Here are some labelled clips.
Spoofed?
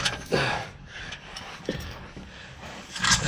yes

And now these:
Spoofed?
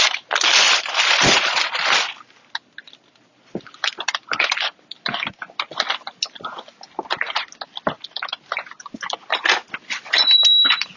no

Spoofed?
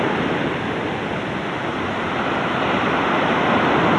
no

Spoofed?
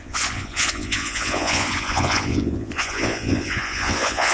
yes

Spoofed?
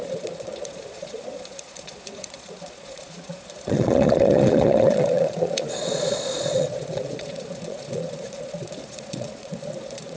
yes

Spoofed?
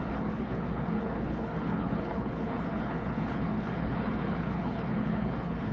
yes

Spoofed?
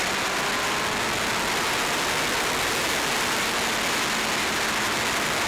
no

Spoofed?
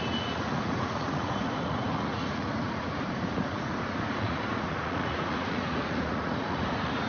yes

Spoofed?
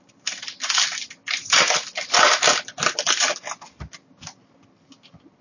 no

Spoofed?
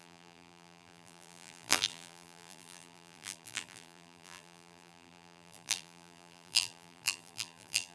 yes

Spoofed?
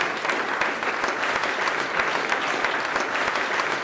no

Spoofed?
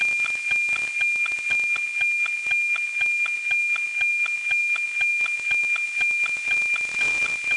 no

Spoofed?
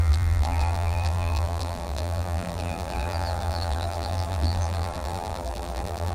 yes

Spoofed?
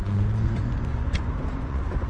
yes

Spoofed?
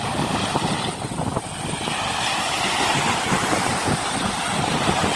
no